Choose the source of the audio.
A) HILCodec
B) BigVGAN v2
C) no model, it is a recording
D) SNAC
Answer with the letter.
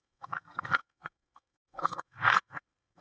D